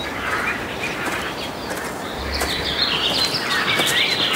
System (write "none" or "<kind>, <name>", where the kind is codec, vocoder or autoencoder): none